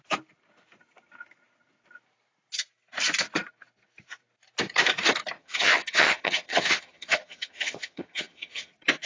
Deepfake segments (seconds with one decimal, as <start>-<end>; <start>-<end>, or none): 5.4-8.7